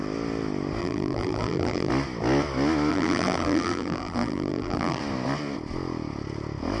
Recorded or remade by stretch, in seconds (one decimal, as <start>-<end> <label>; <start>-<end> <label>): 0.0-0.8 recorded; 0.8-1.9 remade; 1.9-2.9 recorded; 2.9-5.0 remade; 5.0-6.8 recorded